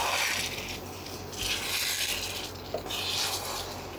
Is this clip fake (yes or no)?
no